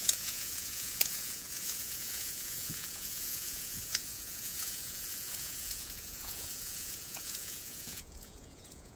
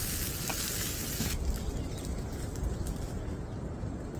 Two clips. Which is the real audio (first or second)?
second